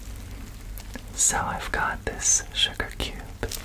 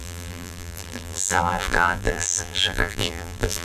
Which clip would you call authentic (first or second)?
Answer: first